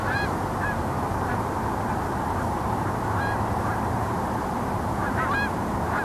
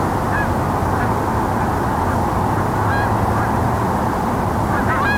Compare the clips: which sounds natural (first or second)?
second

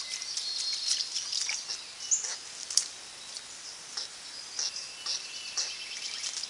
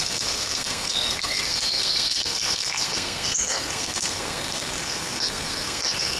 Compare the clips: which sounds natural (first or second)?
first